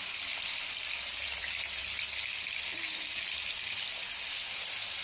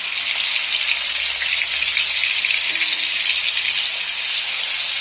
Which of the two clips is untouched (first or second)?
second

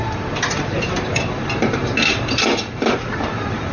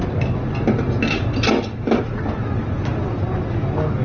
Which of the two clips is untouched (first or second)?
second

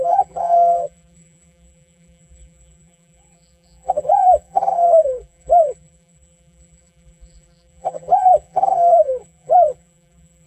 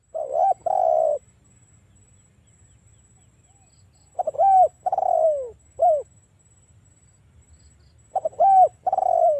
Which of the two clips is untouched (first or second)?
second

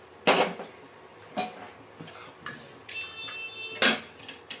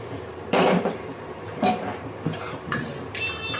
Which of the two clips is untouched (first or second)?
first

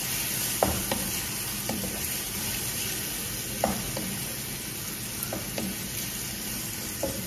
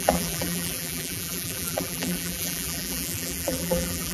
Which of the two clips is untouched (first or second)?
first